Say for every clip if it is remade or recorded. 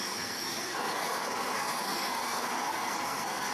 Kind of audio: remade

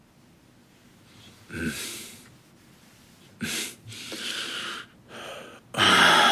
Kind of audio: recorded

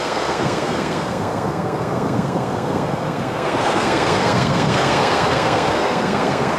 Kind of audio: remade